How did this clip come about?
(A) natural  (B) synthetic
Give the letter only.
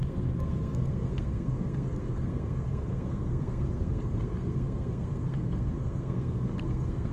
B